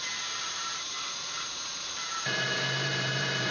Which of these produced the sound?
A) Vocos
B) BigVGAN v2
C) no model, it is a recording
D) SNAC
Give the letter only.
B